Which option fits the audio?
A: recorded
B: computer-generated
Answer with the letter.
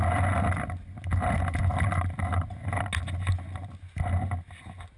A